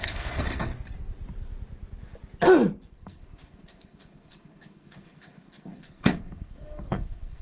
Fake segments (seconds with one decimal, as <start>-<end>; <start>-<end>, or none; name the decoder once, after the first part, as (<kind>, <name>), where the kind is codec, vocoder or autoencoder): 0.0-0.7 (codec, SNAC); 2.9-7.4